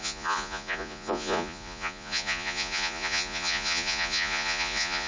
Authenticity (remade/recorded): remade